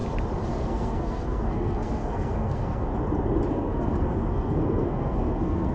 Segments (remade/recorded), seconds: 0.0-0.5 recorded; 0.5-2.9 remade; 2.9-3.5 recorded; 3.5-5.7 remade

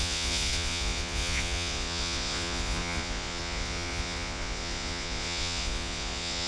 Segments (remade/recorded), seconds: 0.0-6.5 remade

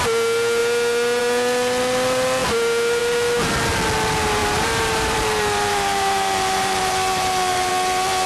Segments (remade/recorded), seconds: 0.0-4.4 recorded; 4.4-7.7 remade; 7.7-8.3 recorded

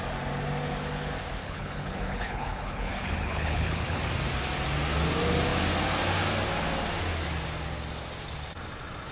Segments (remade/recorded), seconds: 0.0-1.4 recorded; 1.4-4.0 remade; 4.0-9.1 recorded

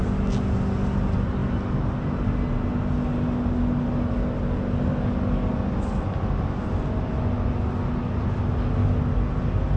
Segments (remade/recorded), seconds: 0.0-9.8 recorded